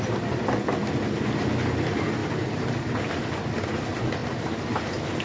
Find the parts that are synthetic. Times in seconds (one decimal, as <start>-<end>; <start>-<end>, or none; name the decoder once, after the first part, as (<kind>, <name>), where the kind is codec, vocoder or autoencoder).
2.2-3.2 (vocoder, BigVGAN v2); 4.2-5.2